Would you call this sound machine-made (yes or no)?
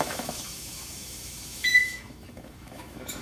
yes